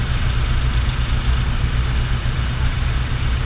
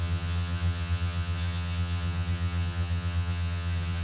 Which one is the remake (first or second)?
second